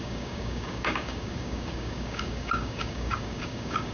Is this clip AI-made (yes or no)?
yes